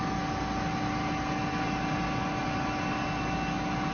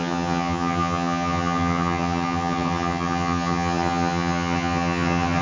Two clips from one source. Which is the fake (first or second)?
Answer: second